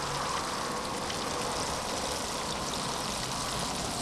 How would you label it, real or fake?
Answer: real